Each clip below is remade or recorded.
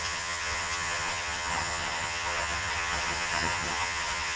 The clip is remade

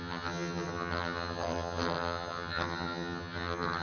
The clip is remade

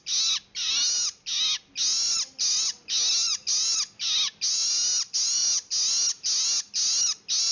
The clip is recorded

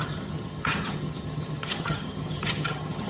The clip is remade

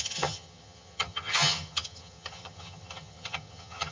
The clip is remade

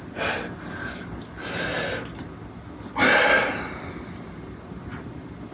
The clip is recorded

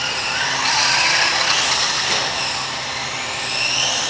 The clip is recorded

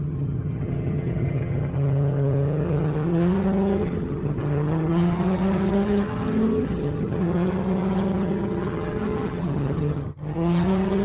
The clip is remade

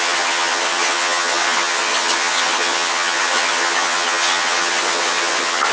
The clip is remade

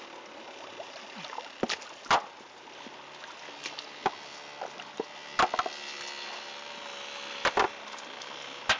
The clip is recorded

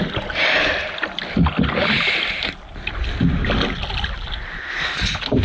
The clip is recorded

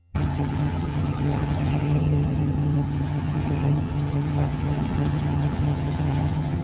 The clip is remade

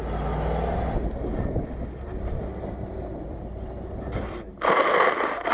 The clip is recorded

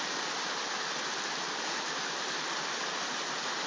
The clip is recorded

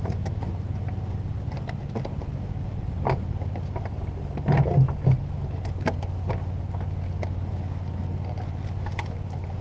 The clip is recorded